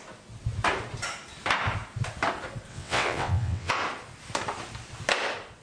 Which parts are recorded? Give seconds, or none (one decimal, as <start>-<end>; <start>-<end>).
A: 0.0-2.7; 3.7-5.6